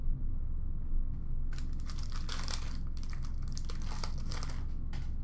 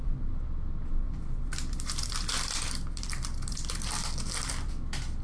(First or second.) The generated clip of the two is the second